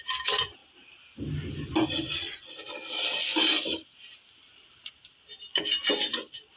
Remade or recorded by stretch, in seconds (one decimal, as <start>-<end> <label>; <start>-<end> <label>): 0.0-6.6 recorded